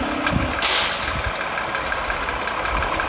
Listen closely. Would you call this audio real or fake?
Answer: real